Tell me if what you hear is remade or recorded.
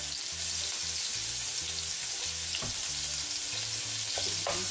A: recorded